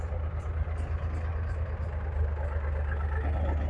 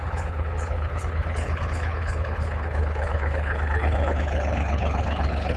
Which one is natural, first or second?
first